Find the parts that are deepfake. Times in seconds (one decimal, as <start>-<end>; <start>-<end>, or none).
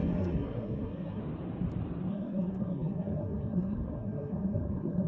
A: 0.0-1.2; 2.1-5.1